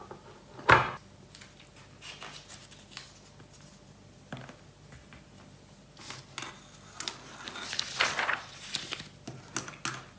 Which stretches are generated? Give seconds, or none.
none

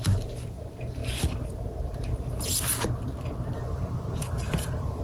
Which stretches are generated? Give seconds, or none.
0.0-5.0 (vocoder, BigVGAN v2)